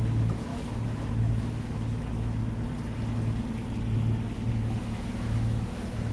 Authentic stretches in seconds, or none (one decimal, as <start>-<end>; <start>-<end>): 2.4-4.5